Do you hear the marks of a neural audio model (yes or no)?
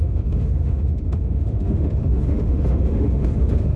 yes